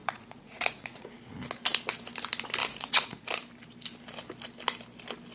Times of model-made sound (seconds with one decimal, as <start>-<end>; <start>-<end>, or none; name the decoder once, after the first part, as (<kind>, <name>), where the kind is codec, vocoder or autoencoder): 0.0-1.1 (vocoder, Vocos); 2.6-3.3